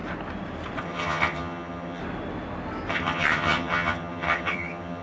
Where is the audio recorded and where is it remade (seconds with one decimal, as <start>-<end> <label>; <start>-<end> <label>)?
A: 0.0-0.8 recorded; 0.8-2.0 remade; 2.0-2.9 recorded; 2.9-5.0 remade